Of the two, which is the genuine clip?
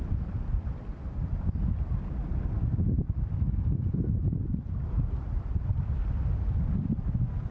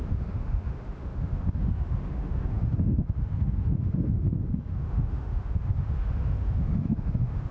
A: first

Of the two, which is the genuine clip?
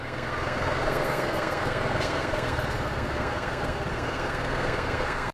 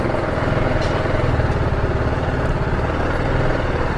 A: second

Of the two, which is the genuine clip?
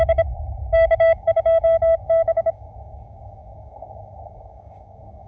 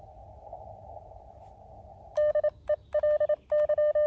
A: second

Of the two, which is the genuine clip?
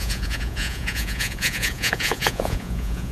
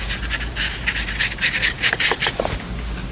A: second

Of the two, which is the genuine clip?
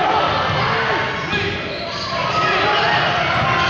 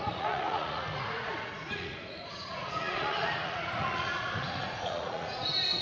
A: first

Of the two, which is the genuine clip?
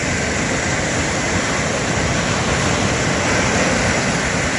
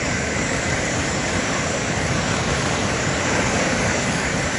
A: first